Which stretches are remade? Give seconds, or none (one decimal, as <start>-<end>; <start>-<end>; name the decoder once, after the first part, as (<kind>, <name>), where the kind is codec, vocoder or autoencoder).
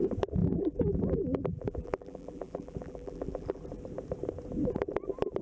0.4-3.6 (vocoder, BigVGAN v2)